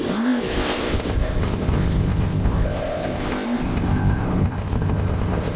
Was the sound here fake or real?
fake